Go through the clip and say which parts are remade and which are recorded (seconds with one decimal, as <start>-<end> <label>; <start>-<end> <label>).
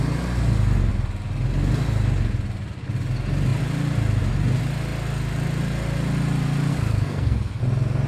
0.0-6.7 recorded; 6.7-7.6 remade; 7.6-8.1 recorded